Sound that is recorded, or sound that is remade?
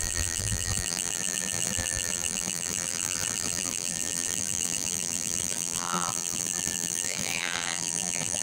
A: remade